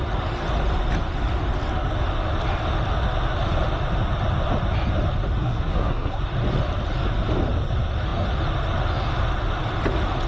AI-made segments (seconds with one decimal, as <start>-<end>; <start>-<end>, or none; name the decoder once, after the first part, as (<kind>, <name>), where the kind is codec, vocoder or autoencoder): 5.4-6.2 (codec, SNAC)